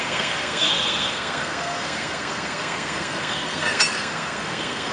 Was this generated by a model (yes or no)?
yes